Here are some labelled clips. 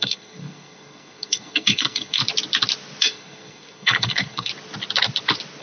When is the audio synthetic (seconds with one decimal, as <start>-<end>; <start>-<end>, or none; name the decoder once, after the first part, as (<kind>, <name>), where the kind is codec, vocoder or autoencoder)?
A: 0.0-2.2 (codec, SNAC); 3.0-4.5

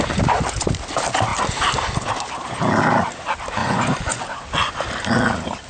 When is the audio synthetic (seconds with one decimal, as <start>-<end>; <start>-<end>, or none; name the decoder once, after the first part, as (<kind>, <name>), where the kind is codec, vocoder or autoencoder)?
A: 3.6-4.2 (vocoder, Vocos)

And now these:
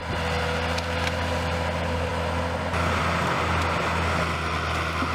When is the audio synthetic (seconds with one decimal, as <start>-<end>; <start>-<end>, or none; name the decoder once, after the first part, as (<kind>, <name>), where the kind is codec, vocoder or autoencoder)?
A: none

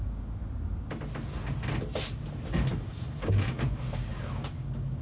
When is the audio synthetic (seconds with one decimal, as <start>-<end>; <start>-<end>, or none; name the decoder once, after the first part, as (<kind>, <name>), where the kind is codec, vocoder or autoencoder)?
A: 0.0-0.4 (codec, DAC); 2.7-5.0

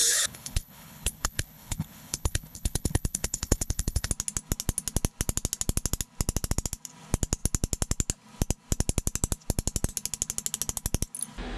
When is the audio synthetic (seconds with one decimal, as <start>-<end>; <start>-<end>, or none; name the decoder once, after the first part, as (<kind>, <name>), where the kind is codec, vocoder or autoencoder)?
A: 0.0-4.1 (codec, HILCodec)